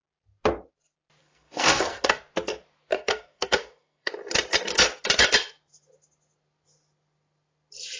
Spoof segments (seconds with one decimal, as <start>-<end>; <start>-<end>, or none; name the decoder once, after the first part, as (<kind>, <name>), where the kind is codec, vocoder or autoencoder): 1.2-2.2 (codec, SNAC); 2.9-4.1